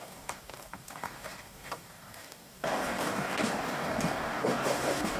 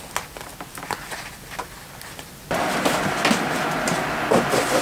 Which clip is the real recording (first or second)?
second